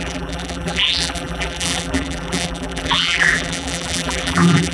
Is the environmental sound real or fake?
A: fake